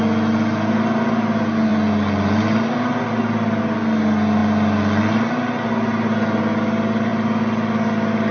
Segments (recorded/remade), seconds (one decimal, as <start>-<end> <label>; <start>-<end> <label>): 0.0-8.3 recorded

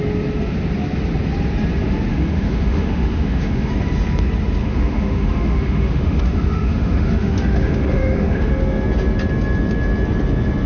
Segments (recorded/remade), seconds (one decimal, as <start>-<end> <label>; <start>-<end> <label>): 0.0-2.1 recorded; 2.1-3.7 remade; 3.7-4.6 recorded; 4.6-8.5 remade; 8.5-10.7 recorded

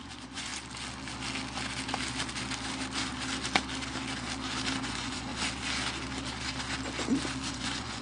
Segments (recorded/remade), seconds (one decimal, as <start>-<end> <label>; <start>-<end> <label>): 0.0-0.5 remade; 0.5-4.8 recorded; 4.8-5.3 remade; 5.3-7.5 recorded; 7.5-8.0 remade

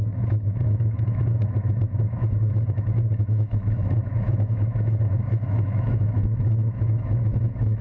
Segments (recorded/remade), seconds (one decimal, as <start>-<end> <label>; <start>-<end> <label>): 0.0-7.8 remade